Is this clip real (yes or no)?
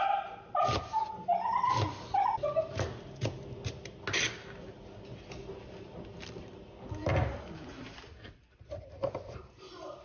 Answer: yes